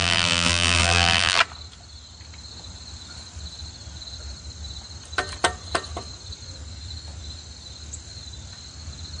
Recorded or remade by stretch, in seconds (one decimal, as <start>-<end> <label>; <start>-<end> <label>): 0.0-1.4 remade; 1.4-9.2 recorded